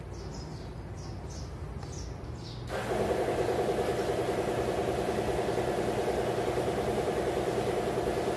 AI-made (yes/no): no